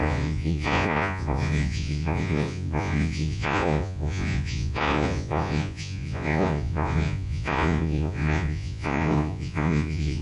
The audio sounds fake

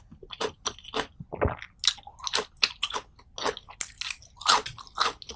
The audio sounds real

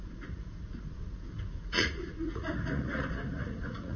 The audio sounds fake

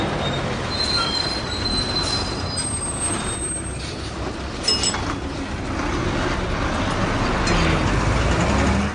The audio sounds real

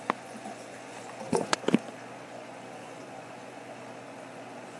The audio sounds fake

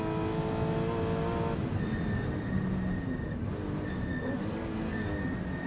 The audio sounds real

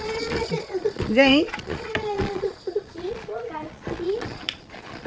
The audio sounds fake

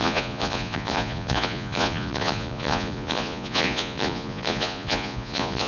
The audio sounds fake